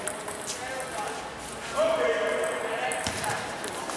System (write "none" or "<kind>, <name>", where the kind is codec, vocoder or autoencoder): none